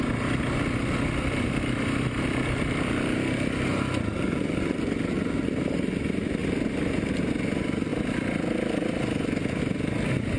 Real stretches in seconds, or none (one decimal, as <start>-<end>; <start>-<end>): 0.0-10.4